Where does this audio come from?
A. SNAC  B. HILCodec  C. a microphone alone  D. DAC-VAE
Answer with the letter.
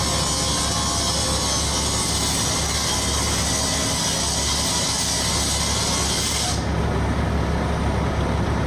C